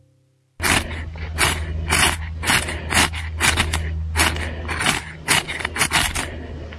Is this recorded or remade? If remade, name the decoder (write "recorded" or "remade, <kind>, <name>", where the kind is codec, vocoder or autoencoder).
recorded